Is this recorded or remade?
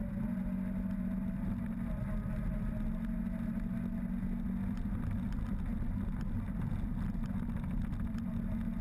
recorded